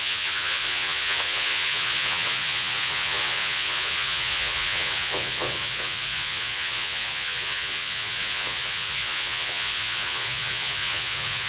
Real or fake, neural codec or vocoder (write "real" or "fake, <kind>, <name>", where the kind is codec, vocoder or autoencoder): fake, vocoder, Vocos